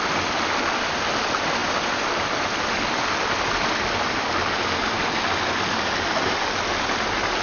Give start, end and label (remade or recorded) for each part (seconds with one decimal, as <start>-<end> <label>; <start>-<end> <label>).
0.0-1.6 recorded; 1.6-4.2 remade; 4.2-7.4 recorded